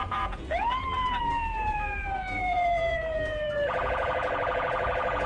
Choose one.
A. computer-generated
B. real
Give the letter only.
A